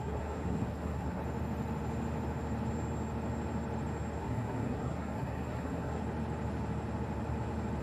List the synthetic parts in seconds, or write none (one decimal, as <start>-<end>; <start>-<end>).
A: 0.0-1.2; 4.2-6.0